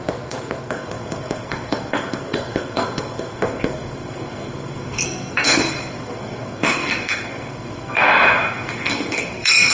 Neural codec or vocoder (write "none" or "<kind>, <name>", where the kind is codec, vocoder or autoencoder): codec, SNAC